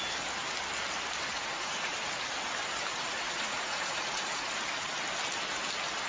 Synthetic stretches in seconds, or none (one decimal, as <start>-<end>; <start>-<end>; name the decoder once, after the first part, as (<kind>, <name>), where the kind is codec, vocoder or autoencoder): 1.3-1.9 (vocoder, Vocos); 2.9-4.5